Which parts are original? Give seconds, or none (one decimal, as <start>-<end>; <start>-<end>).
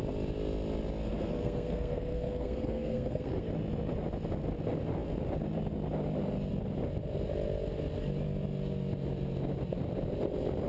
0.0-1.3; 3.5-10.7